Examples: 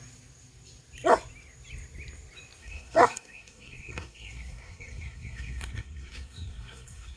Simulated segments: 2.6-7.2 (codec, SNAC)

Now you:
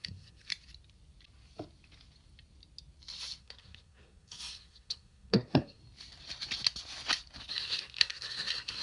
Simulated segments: 0.0-0.5 (codec, SNAC); 3.4-5.8; 7.5-8.8